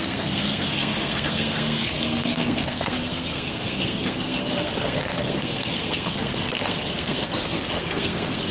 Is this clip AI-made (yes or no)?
yes